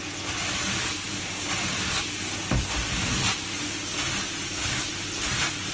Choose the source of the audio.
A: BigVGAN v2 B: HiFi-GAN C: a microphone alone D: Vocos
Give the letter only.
C